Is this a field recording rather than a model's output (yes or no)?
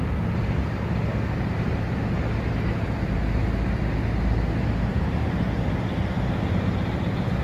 yes